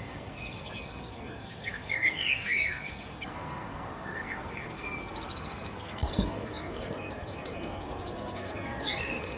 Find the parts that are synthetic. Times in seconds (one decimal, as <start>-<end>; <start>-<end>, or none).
0.0-9.4